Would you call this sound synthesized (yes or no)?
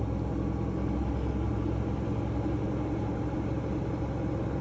no